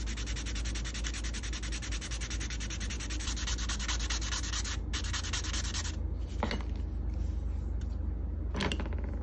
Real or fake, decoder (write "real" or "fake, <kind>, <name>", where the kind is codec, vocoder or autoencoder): real